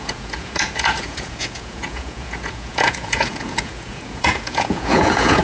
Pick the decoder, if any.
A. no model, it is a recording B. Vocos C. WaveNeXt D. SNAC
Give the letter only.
B